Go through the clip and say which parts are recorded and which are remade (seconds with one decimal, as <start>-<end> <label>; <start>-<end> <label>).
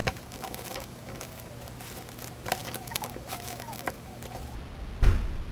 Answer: 0.0-1.5 remade; 1.5-2.6 recorded; 2.6-4.2 remade; 4.2-5.5 recorded